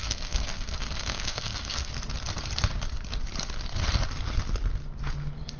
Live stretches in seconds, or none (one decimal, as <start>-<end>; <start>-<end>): 1.9-5.6